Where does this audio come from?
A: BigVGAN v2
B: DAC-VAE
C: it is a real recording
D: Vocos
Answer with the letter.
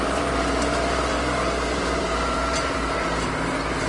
A